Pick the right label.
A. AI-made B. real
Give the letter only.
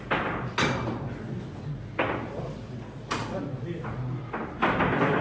B